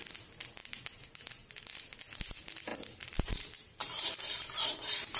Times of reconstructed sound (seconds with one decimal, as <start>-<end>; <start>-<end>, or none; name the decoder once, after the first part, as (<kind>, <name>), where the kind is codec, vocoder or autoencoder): 0.6-1.8 (vocoder, BigVGAN v2); 2.7-5.2